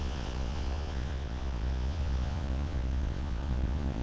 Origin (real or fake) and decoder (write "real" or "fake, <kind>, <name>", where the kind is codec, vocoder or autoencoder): fake, vocoder, Vocos